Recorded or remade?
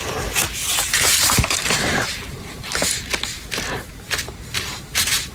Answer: recorded